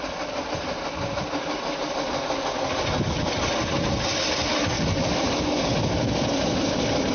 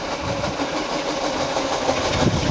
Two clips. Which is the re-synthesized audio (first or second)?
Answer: second